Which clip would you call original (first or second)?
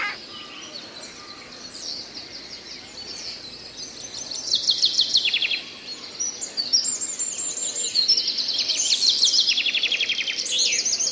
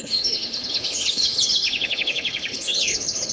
first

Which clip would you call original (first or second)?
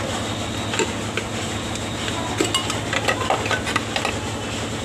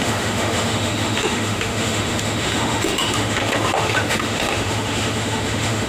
first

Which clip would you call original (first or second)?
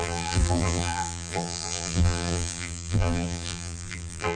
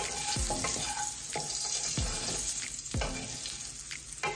second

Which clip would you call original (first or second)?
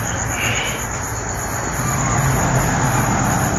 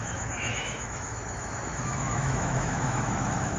first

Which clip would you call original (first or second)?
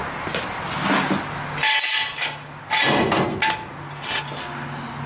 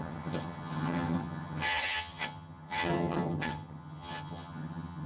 first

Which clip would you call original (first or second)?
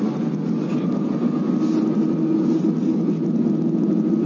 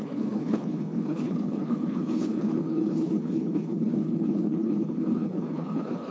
first